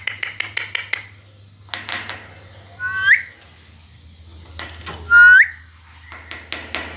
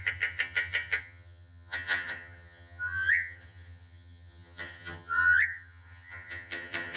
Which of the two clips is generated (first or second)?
second